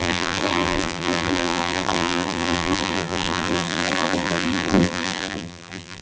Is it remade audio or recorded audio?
remade